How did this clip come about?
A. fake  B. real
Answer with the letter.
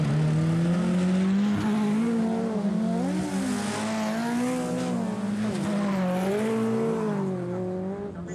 B